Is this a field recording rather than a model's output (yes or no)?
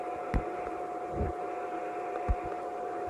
yes